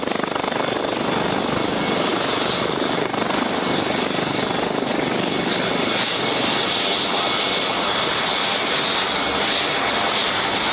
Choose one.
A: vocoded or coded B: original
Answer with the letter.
B